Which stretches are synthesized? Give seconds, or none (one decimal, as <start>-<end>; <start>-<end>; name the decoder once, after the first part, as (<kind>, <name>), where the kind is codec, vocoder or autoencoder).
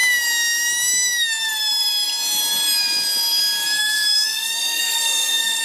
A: 3.8-5.6 (codec, SNAC)